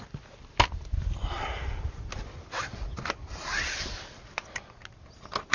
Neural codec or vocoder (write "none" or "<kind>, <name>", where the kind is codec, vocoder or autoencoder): none